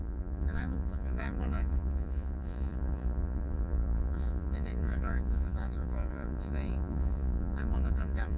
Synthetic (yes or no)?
yes